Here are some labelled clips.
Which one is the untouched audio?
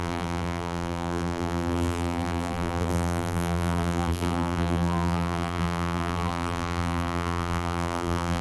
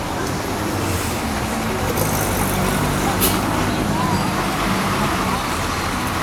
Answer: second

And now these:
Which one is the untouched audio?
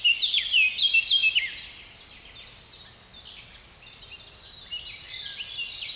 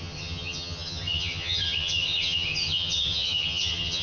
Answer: first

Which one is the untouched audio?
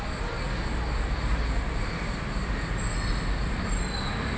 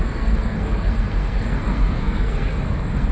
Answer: first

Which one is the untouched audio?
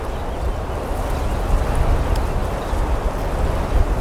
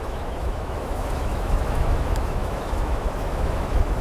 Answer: first